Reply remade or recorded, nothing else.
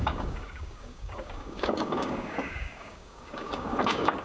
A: remade